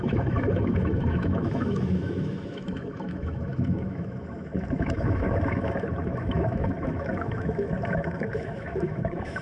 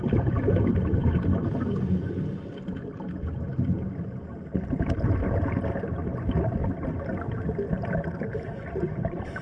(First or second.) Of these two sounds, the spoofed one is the first